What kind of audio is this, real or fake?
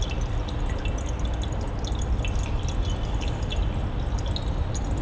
real